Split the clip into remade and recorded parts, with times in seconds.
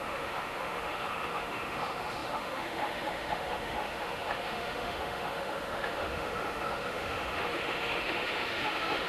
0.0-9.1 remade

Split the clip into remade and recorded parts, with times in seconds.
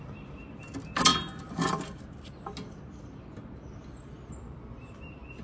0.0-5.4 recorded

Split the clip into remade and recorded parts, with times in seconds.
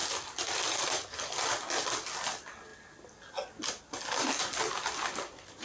0.0-5.6 recorded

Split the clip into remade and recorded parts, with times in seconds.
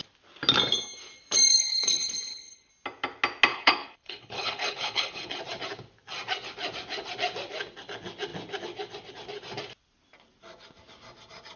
0.0-1.5 recorded; 1.5-2.7 remade; 2.7-3.5 recorded; 3.5-5.4 remade; 5.4-11.6 recorded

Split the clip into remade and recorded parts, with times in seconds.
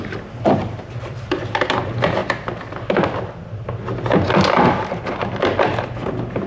0.0-0.6 recorded; 0.6-1.4 remade; 1.4-6.5 recorded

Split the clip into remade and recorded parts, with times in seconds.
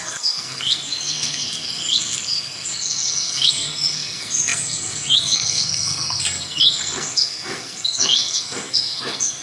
0.0-9.4 remade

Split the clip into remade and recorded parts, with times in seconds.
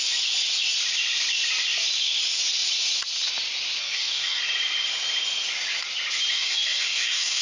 0.0-3.8 recorded; 3.8-4.4 remade; 4.4-6.3 recorded; 6.3-7.4 remade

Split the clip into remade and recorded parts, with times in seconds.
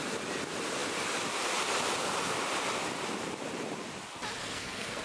0.0-4.4 recorded; 4.4-5.0 remade